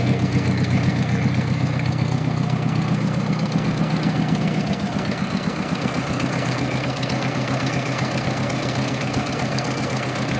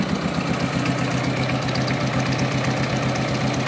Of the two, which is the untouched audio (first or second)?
second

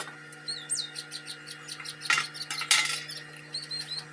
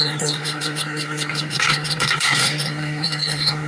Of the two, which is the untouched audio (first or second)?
first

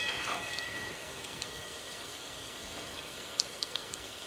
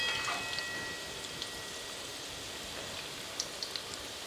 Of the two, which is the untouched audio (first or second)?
second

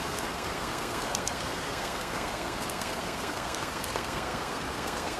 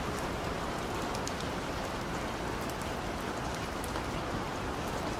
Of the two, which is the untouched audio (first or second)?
second